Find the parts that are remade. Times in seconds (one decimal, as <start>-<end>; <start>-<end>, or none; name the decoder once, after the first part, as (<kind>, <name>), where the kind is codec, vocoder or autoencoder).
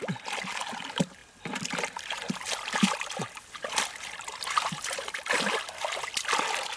1.2-5.3 (vocoder, BigVGAN v2)